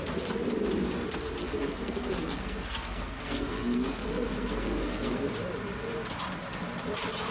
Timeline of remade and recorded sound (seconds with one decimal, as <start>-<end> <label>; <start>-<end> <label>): 0.0-1.4 recorded; 1.4-5.2 remade; 5.2-7.3 recorded